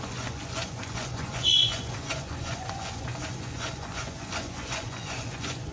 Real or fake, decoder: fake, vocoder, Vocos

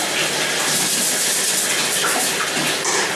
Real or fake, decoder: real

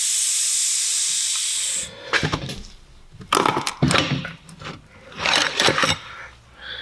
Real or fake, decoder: real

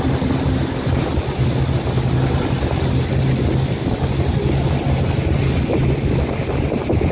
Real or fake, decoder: real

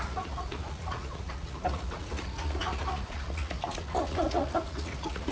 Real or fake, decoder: fake, vocoder, Vocos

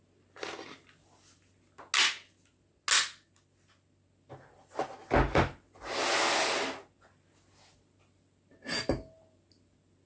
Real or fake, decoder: real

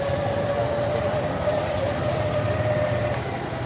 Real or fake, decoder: real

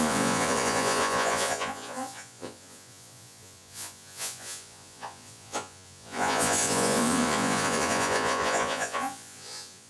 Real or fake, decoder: fake, vocoder, Vocos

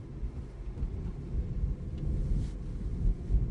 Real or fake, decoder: real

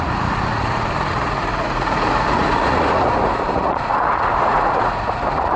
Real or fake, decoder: fake, vocoder, Vocos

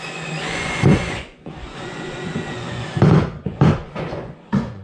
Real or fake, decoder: fake, vocoder, Vocos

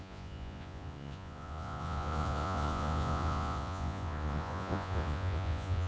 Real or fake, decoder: fake, vocoder, Vocos